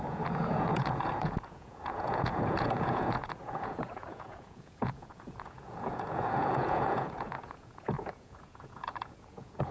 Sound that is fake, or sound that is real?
fake